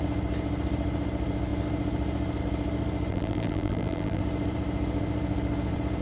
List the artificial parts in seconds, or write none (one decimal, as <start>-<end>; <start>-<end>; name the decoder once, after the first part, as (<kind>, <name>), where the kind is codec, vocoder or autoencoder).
3.1-4.2 (vocoder, BigVGAN v2)